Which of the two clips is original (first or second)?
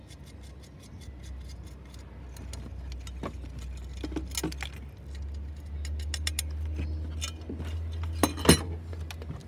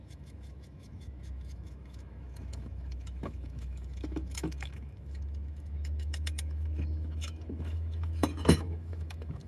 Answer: first